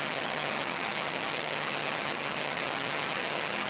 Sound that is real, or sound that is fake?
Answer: fake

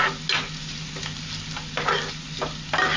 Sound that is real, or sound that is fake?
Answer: real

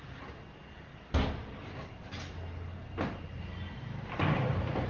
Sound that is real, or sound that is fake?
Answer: real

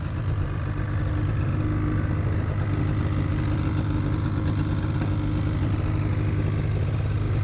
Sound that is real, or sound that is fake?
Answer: real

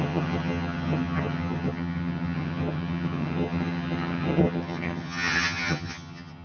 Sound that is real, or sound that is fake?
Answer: fake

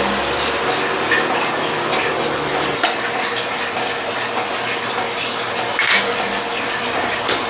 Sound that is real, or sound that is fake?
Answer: real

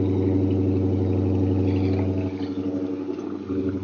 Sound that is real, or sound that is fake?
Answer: real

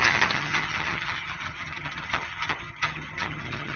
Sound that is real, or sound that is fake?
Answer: fake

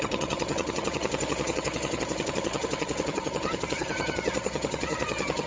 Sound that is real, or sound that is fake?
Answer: fake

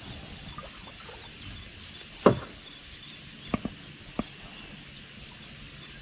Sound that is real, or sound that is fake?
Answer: real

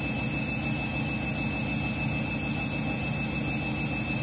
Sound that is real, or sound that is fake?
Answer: real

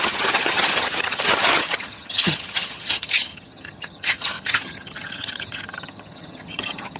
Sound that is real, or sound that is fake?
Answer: fake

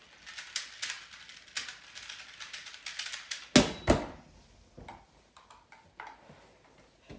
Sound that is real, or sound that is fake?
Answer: real